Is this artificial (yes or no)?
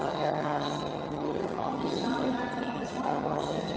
yes